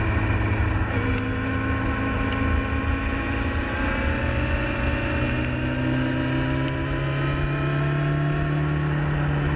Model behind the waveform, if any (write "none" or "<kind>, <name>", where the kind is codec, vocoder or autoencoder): none